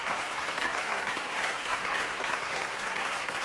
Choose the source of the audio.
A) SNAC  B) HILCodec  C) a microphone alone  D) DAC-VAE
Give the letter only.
A